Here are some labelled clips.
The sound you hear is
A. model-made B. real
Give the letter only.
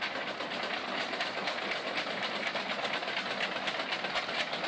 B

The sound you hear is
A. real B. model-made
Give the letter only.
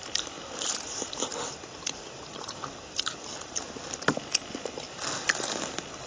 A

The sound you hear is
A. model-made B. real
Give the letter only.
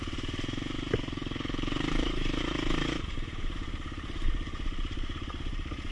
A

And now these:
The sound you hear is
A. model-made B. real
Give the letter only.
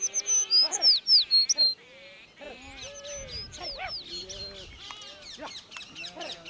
B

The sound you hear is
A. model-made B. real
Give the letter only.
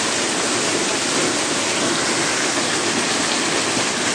B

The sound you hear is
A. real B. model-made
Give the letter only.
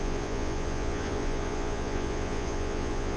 B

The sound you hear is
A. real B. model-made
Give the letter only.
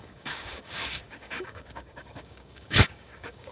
B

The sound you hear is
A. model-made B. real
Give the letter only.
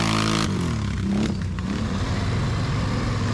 B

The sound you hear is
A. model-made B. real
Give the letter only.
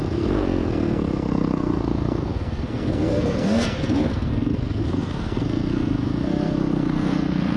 A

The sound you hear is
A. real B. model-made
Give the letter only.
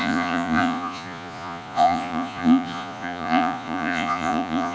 B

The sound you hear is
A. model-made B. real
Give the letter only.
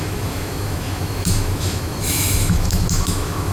A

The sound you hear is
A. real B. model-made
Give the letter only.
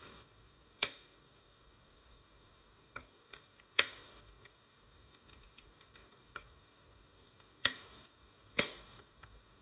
B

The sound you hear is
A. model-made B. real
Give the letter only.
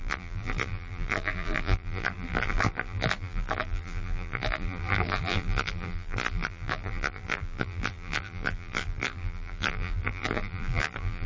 A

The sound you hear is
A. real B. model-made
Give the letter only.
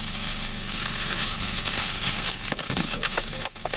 B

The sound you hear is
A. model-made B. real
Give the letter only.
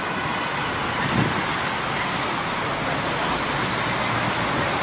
B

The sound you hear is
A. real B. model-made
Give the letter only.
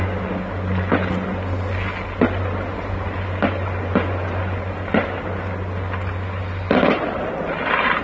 A